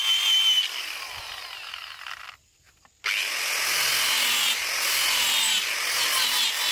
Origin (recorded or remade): recorded